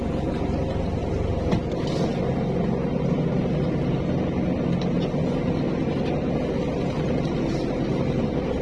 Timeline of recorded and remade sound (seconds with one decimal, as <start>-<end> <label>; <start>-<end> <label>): 0.0-8.6 recorded